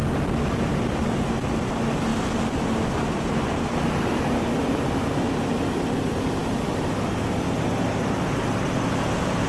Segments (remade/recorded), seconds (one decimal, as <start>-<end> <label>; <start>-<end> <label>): 0.0-9.5 recorded

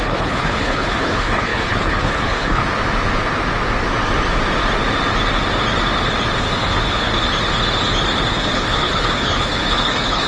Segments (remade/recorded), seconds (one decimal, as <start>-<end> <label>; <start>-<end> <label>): 0.0-2.6 remade; 2.6-6.4 recorded; 6.4-7.1 remade; 7.1-8.3 recorded; 8.3-10.3 remade

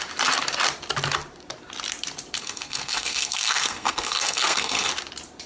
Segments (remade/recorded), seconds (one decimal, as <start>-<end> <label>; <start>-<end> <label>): 0.0-2.4 recorded; 2.4-4.9 remade; 4.9-5.5 recorded